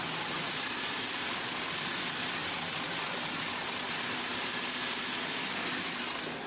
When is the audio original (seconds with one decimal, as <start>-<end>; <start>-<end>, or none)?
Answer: 0.0-6.5